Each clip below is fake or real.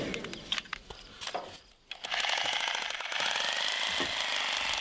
real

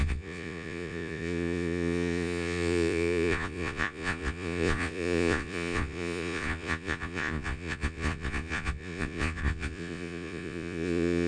fake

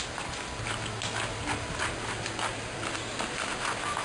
real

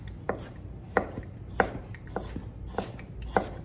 real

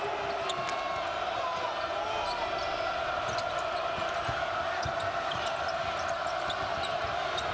real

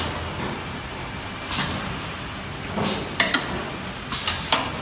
real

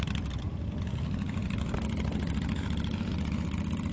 real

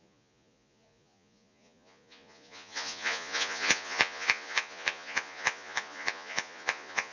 fake